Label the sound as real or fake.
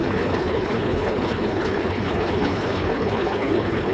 fake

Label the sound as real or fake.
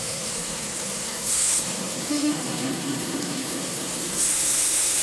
fake